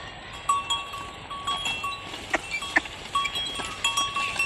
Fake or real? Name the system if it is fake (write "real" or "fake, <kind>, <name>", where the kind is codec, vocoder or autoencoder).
real